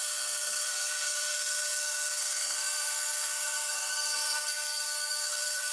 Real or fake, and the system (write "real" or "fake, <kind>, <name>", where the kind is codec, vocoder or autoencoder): fake, codec, SNAC